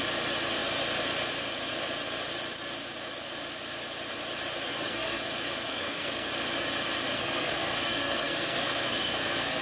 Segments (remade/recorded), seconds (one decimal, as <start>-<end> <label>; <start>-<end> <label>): 0.0-4.7 recorded; 4.7-5.2 remade; 5.2-5.7 recorded; 5.7-6.3 remade; 6.3-7.1 recorded; 7.1-9.6 remade